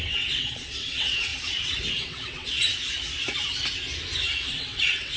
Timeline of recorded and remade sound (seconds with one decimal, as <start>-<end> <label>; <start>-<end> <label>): 0.0-1.3 remade; 1.3-1.9 recorded; 1.9-2.7 remade; 2.7-4.5 recorded; 4.5-5.2 remade